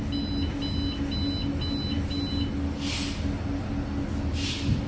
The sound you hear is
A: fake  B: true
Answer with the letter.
B